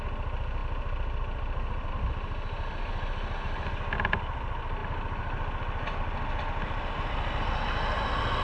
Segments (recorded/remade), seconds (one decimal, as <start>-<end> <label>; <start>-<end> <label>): 0.0-8.4 recorded